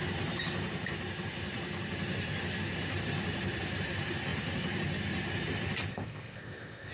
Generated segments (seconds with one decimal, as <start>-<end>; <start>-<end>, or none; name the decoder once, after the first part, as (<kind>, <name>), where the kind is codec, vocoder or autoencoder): 5.9-6.9 (codec, ZipCodec)

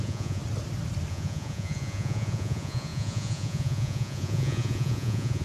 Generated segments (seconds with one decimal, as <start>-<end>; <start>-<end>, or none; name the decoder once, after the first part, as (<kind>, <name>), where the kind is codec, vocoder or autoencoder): 0.0-0.4 (vocoder, Vocos); 1.1-5.4